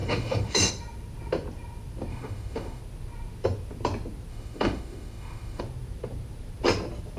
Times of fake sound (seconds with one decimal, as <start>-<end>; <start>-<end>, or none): 0.0-0.7; 2.1-2.8; 4.3-5.6